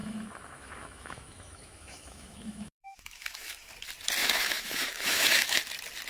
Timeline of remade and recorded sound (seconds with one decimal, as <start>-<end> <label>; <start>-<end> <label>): 0.0-3.7 remade; 3.7-4.2 recorded; 4.2-5.6 remade; 5.6-6.1 recorded